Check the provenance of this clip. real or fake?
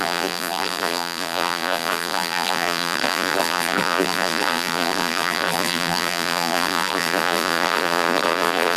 fake